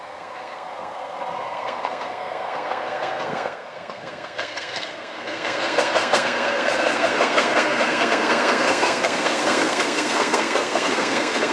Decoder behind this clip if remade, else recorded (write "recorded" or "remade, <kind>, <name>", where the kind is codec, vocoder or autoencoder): remade, codec, SNAC